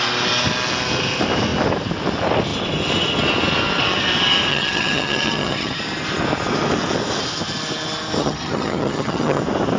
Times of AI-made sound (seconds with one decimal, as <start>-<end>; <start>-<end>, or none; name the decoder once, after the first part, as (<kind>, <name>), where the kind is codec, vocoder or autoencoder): 4.5-5.8 (vocoder, HiFi-GAN); 8.2-9.4